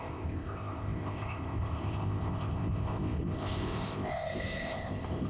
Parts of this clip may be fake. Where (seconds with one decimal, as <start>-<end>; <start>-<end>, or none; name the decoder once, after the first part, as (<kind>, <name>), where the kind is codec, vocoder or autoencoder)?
0.0-5.3 (codec, ZipCodec)